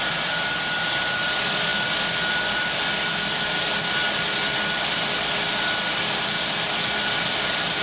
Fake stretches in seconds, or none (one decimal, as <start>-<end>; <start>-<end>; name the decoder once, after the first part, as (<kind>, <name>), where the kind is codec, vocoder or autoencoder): none